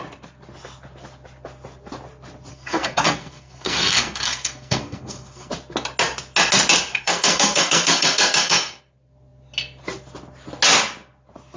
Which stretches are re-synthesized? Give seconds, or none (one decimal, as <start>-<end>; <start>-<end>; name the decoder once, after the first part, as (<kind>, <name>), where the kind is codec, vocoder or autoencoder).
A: 2.5-5.5 (codec, SNAC); 6.9-8.8